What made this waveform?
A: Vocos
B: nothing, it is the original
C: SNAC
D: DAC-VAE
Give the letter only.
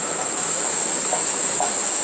D